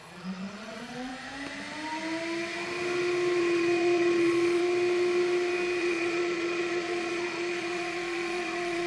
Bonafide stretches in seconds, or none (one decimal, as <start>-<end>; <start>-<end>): 1.1-3.4; 4.6-5.8